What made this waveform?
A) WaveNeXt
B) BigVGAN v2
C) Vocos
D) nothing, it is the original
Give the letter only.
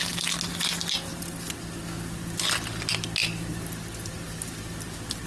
D